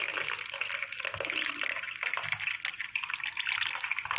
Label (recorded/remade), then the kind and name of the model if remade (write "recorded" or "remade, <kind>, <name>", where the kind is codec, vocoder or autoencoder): remade, vocoder, BigVGAN v2